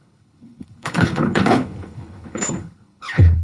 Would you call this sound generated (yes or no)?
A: yes